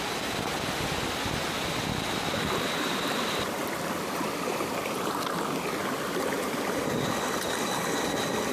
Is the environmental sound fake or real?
real